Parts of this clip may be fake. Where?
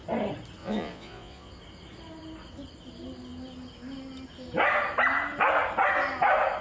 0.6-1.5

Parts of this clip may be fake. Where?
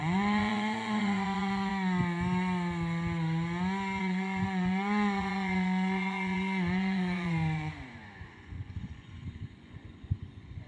0.0-1.7; 4.0-10.7